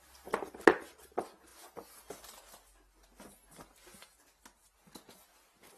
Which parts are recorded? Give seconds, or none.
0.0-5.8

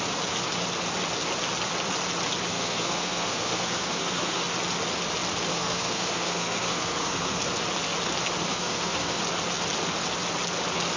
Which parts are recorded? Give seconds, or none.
0.0-2.5; 4.4-5.5; 7.4-8.5; 9.2-11.0

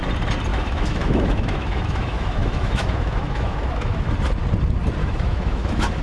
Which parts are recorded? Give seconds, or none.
0.0-0.5; 4.1-5.0

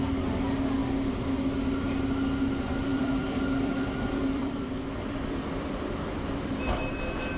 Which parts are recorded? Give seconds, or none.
0.0-2.9; 6.7-7.4

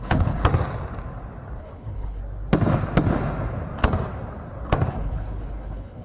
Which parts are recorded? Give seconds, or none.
0.4-1.6; 2.2-4.9

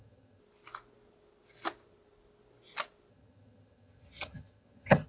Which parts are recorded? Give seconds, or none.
0.4-3.1

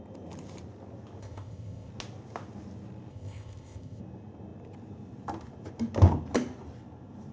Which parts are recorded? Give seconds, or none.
0.0-1.2; 1.9-3.1; 4.0-7.3

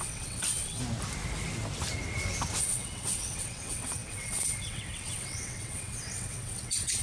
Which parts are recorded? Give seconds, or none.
0.8-2.6